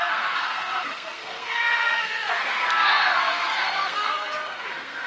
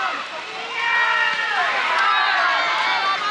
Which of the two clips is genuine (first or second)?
second